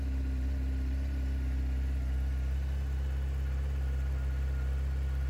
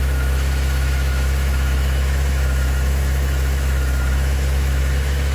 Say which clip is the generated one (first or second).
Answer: second